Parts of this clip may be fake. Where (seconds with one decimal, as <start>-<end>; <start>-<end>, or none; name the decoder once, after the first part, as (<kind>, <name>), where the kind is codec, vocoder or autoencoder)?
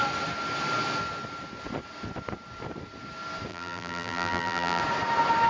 3.5-4.8 (vocoder, BigVGAN v2)